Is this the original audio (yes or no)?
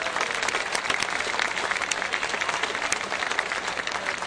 yes